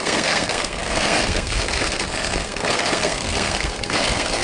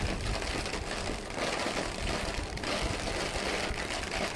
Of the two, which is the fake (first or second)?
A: first